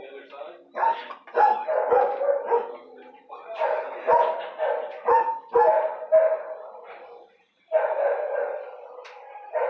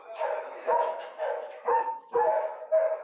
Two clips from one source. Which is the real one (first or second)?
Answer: first